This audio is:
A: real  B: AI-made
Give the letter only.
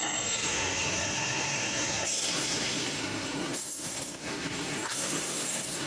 B